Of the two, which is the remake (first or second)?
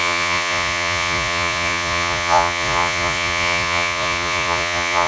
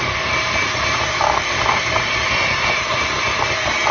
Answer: first